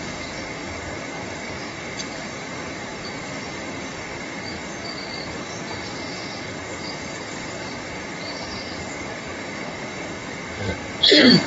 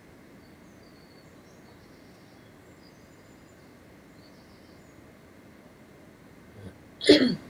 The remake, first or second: first